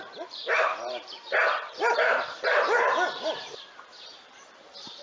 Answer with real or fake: fake